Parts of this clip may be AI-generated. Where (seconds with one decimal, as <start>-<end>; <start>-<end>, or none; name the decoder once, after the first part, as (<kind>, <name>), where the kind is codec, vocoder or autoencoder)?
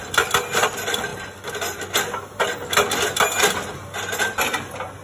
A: none